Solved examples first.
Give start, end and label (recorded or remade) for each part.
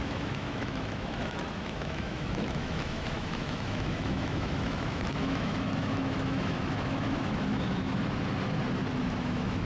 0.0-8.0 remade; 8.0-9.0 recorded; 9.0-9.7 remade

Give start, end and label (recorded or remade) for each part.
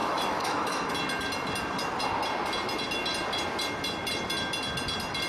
0.0-0.9 remade; 0.9-5.3 recorded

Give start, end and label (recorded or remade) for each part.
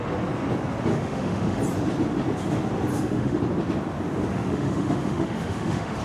0.0-0.9 recorded; 0.9-1.6 remade; 1.6-2.9 recorded; 2.9-3.4 remade; 3.4-4.3 recorded; 4.3-6.0 remade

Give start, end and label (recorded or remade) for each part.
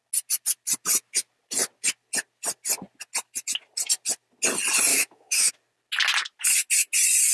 0.0-4.9 recorded; 4.9-5.5 remade; 5.5-7.3 recorded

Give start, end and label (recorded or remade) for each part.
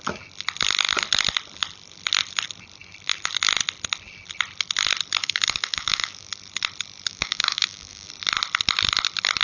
0.0-5.2 recorded; 5.2-6.3 remade; 6.3-7.1 recorded; 7.1-8.1 remade; 8.1-9.4 recorded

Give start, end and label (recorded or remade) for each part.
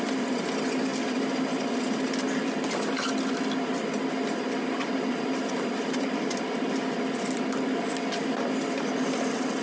0.0-9.6 recorded